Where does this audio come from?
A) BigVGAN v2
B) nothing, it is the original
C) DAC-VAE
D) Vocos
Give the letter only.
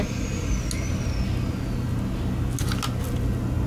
B